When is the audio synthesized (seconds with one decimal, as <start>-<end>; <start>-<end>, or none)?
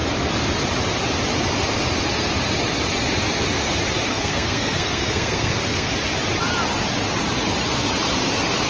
4.1-5.9